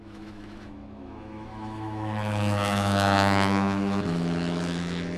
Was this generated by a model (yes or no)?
yes